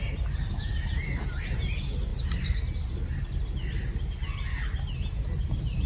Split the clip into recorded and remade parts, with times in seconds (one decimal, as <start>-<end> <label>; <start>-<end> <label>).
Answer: 0.0-5.9 recorded